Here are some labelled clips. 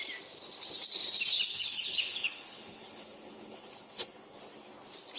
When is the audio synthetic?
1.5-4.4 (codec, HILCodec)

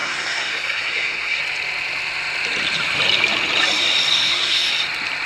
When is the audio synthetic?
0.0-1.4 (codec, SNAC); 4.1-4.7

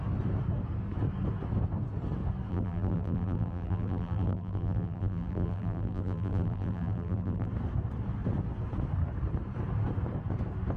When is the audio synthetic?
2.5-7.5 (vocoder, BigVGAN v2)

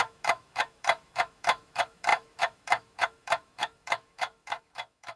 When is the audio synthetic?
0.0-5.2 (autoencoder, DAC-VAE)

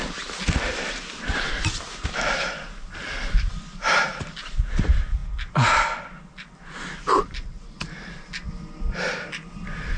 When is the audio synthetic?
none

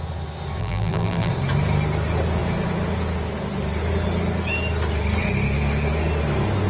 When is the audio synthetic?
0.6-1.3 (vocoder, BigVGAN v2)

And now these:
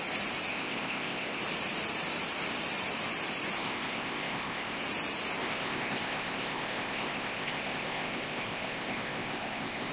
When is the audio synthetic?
0.5-1.4 (codec, ZipCodec); 3.6-4.8; 5.4-9.9